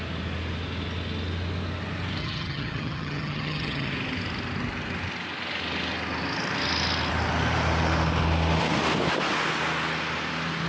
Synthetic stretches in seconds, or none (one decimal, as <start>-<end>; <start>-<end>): 2.2-3.9